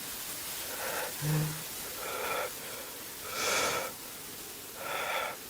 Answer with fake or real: real